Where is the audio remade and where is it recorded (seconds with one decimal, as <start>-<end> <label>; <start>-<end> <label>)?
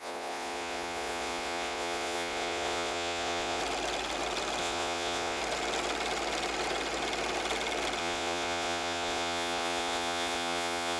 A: 0.0-3.6 remade; 3.6-4.6 recorded; 4.6-5.4 remade; 5.4-8.0 recorded; 8.0-11.0 remade